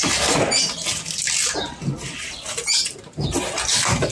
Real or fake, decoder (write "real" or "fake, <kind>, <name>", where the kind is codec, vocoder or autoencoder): real